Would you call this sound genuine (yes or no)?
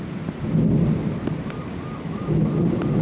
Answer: yes